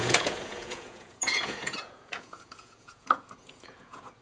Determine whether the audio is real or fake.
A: fake